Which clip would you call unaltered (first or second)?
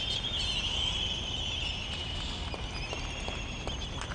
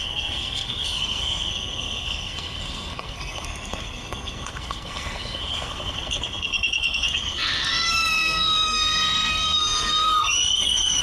first